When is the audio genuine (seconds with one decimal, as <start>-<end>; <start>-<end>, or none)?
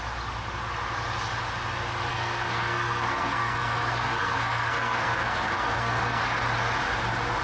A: 0.0-2.1; 6.2-7.4